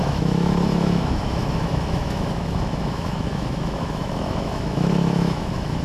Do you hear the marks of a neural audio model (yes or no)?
yes